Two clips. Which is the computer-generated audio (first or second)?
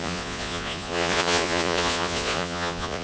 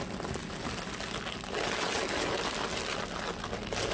first